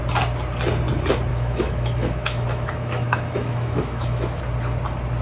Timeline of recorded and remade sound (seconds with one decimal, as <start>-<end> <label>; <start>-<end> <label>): 0.0-1.3 recorded; 1.3-4.4 remade; 4.4-5.2 recorded